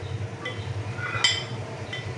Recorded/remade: recorded